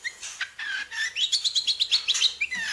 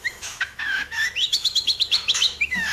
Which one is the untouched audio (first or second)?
first